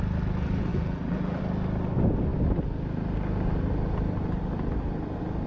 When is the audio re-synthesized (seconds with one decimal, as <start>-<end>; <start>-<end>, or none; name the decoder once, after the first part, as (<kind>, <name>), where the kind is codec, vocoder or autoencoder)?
0.7-1.4 (vocoder, BigVGAN v2)